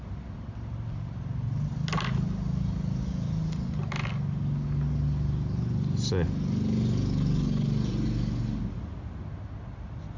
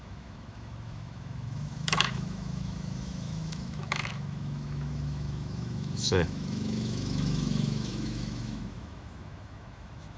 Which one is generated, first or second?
second